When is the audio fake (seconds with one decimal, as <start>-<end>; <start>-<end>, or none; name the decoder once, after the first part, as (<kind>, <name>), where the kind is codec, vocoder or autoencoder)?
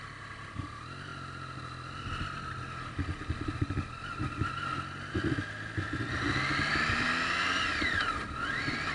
none